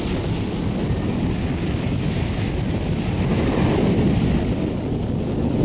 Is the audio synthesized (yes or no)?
no